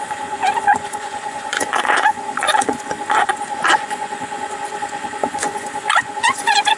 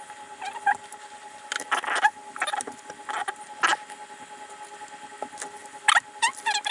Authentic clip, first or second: second